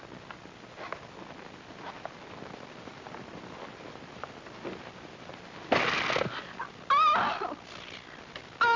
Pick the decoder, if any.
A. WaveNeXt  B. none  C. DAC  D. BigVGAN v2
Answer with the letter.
B